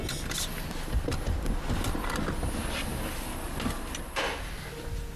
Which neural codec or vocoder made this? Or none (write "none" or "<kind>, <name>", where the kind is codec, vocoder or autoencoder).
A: none